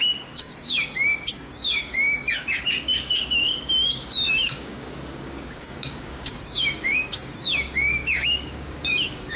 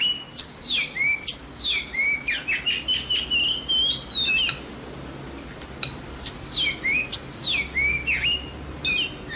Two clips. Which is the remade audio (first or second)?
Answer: first